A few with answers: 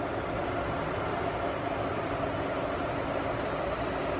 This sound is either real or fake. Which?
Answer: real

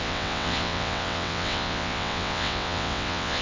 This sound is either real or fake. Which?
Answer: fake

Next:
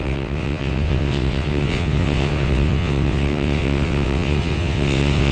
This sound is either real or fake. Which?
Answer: fake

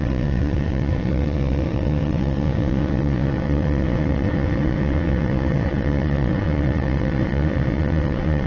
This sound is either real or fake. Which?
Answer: fake